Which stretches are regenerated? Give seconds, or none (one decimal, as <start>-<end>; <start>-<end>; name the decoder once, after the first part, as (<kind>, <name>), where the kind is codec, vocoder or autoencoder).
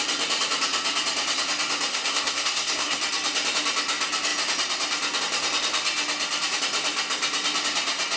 1.9-3.0 (codec, SNAC)